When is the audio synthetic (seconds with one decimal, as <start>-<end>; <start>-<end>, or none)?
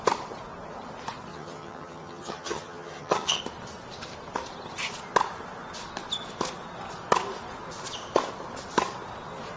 1.3-3.4